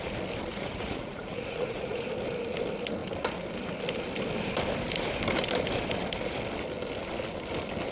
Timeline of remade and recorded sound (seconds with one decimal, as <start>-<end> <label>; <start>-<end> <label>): 0.0-0.5 recorded; 0.5-2.1 remade; 2.1-7.9 recorded